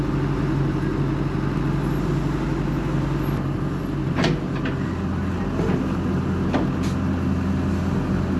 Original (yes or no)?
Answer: yes